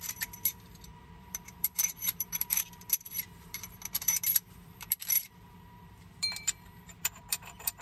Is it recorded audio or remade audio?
remade